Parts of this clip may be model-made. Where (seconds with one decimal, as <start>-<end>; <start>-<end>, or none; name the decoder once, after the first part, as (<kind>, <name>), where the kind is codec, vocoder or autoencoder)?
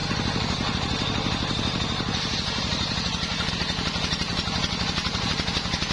none